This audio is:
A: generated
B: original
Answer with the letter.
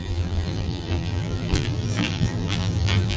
A